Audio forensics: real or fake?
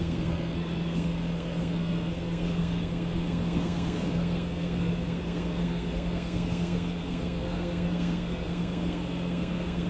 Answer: fake